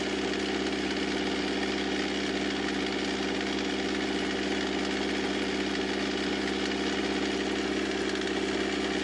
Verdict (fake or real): real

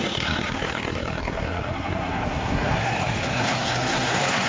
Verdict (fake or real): fake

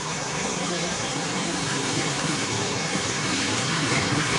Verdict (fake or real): fake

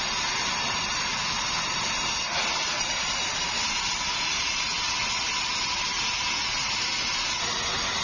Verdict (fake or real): real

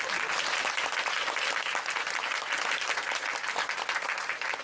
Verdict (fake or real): real